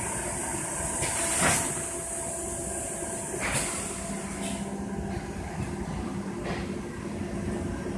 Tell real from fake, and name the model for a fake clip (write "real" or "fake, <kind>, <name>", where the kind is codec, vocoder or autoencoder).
real